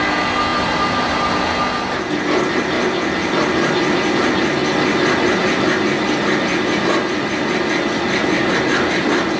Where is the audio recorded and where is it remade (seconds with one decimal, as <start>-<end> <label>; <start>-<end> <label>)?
0.0-0.5 recorded; 0.5-1.3 remade; 1.3-9.4 recorded